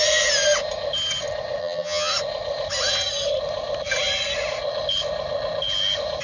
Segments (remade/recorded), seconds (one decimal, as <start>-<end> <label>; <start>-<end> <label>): 0.0-1.6 recorded; 1.6-2.1 remade; 2.1-6.2 recorded